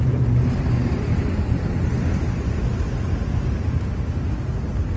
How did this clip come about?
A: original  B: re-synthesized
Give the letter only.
A